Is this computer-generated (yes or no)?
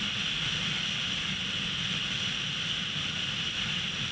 no